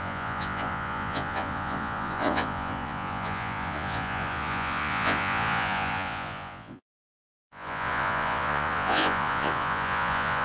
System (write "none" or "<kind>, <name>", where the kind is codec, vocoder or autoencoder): vocoder, Vocos